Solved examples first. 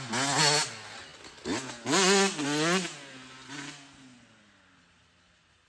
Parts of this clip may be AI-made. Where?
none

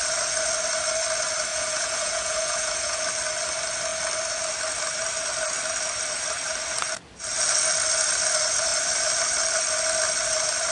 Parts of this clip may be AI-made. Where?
1.5-3.0 (vocoder, Vocos)

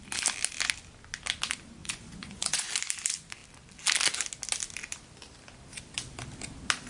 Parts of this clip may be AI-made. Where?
1.8-2.7 (vocoder, Vocos)

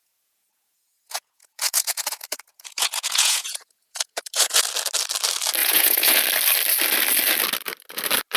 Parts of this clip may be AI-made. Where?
0.0-4.6 (vocoder, Vocos); 5.6-6.2

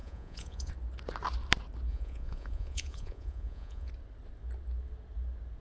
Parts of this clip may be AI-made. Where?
0.0-0.7 (vocoder, Vocos); 1.9-3.9

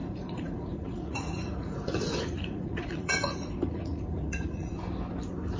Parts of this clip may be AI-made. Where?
0.0-4.7 (vocoder, Vocos)